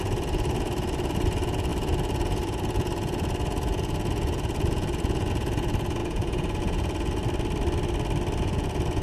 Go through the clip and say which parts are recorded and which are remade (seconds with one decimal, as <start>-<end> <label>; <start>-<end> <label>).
0.0-7.2 remade; 7.2-8.4 recorded; 8.4-9.0 remade

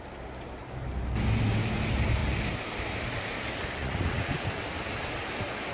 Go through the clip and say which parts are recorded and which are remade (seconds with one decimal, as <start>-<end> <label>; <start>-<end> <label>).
0.0-3.8 recorded; 3.8-4.5 remade; 4.5-5.7 recorded

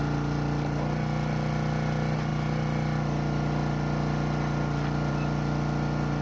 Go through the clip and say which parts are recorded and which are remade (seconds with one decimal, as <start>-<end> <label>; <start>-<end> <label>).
0.0-6.2 recorded